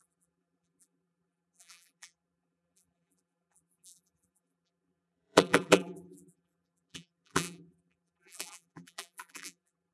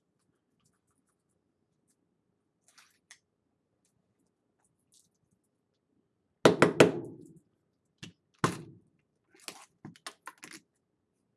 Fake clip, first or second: first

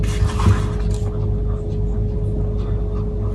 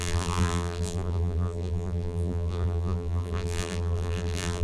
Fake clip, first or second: second